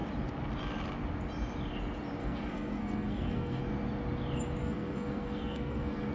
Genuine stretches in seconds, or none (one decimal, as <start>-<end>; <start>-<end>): 0.0-2.2; 3.6-4.6